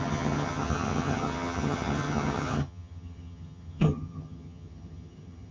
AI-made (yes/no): yes